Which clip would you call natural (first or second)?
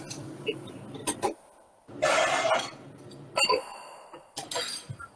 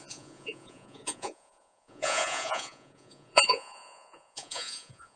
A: first